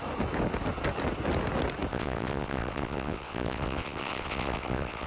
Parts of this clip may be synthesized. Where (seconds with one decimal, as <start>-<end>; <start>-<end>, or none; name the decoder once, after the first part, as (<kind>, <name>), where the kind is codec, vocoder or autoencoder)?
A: 1.9-5.1 (vocoder, WaveNeXt)